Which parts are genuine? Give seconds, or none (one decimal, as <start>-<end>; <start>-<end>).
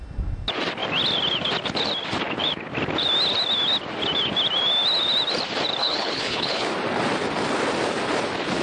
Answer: 0.0-5.8; 6.7-8.6